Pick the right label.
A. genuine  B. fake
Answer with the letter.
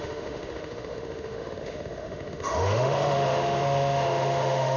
B